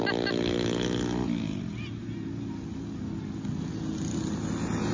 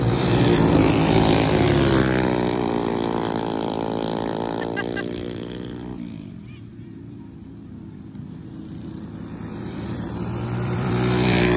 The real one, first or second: first